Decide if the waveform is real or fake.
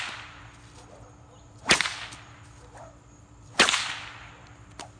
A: real